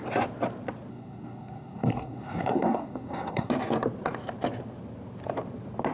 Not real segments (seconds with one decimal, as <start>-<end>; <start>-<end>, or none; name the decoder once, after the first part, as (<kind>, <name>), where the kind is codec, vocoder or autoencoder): 0.9-3.5 (codec, SNAC)